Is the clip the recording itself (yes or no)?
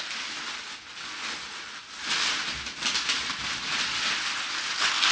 yes